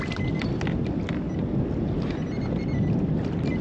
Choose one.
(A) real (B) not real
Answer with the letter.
A